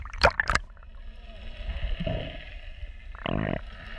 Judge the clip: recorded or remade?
recorded